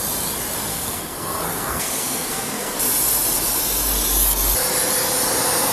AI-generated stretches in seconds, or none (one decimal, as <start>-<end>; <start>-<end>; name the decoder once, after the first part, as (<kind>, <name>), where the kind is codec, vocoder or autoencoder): 0.7-2.8 (codec, SNAC)